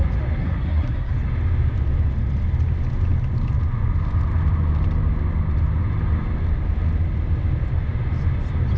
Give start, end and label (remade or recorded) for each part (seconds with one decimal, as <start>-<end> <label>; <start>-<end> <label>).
0.0-0.4 recorded; 0.4-1.1 remade; 1.1-8.8 recorded